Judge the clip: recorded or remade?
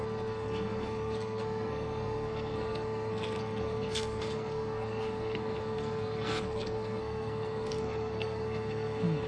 remade